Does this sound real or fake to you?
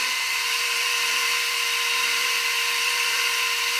fake